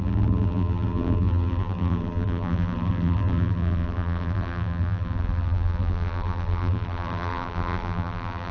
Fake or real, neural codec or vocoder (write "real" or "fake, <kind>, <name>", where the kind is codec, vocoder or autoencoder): fake, vocoder, BigVGAN v2